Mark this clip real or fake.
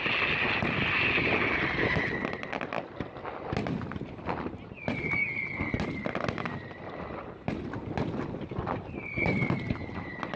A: real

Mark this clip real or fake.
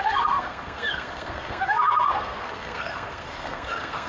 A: fake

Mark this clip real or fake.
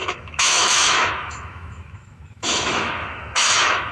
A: fake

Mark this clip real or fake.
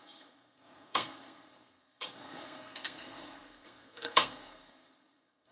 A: fake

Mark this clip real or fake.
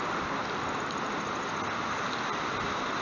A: real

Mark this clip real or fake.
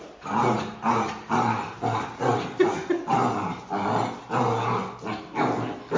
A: real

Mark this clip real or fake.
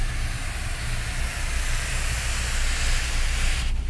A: real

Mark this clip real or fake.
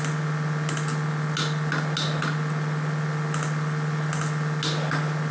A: real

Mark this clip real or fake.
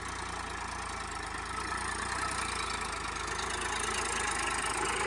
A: real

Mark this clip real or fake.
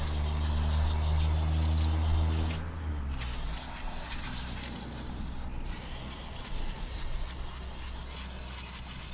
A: real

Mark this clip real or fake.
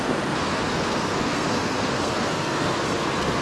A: fake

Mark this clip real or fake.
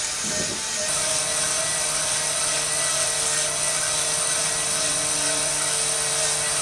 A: real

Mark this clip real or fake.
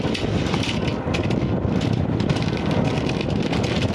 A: real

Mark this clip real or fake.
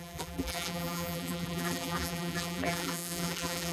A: fake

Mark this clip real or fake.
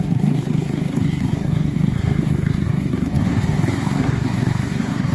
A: fake